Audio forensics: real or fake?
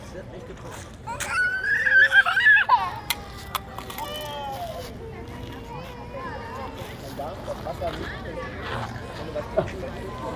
real